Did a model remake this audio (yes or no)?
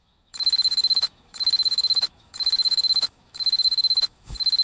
yes